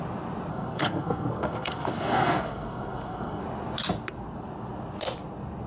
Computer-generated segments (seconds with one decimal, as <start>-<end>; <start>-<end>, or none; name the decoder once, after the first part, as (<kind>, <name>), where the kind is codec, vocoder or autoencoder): 0.5-3.4 (codec, SNAC)